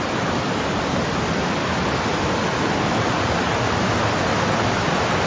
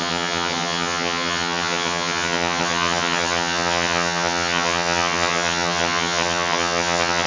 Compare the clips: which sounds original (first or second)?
first